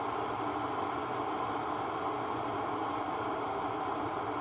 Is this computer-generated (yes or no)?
no